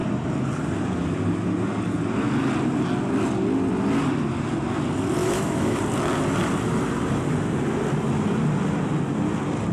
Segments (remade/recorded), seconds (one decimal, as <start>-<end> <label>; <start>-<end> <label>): 0.0-5.2 recorded; 5.2-5.8 remade; 5.8-9.7 recorded